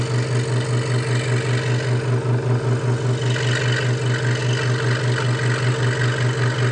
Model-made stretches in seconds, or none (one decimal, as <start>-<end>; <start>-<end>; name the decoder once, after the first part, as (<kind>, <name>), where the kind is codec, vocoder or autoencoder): none